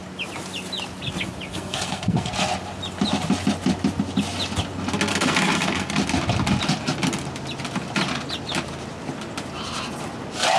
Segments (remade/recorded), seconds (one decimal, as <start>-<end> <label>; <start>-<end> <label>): 0.0-1.5 recorded; 1.5-2.3 remade; 2.3-5.1 recorded; 5.1-5.9 remade; 5.9-10.6 recorded